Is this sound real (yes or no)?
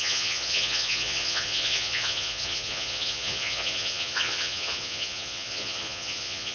no